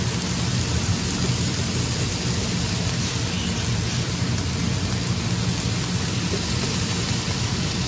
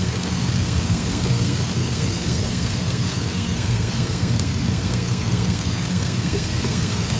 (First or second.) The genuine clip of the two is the first